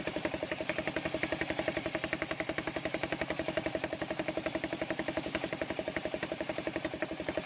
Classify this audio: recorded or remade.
remade